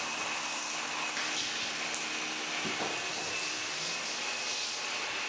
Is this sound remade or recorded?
recorded